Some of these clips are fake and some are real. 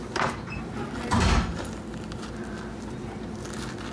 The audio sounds real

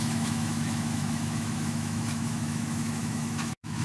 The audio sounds fake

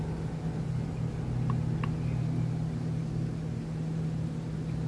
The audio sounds real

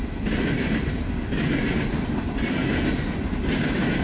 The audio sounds real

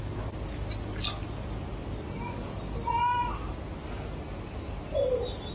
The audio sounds real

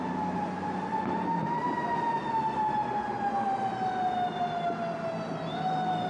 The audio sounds real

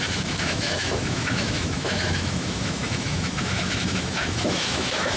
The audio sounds fake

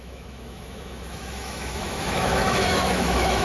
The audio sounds fake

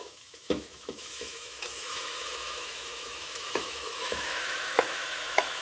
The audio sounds fake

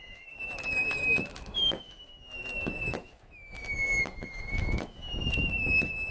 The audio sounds fake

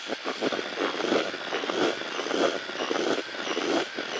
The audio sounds real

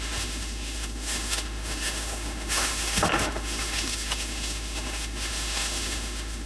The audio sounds fake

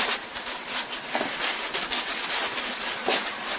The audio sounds real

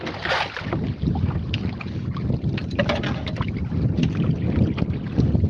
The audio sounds real